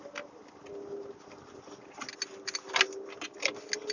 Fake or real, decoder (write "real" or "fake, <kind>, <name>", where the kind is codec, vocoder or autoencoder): real